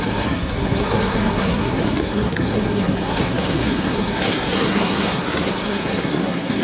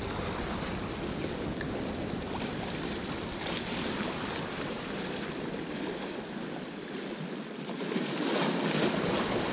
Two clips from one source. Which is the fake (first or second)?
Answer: first